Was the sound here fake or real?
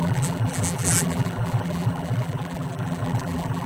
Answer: fake